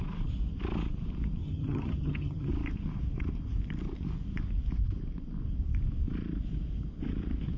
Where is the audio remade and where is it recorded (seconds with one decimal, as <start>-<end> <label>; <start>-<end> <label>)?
0.0-1.4 recorded; 1.4-2.5 remade; 2.5-7.6 recorded